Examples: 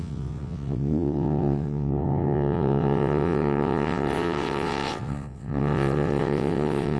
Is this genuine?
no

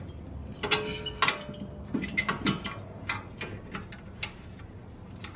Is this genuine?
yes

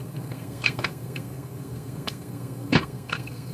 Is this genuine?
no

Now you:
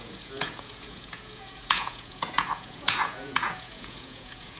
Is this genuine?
no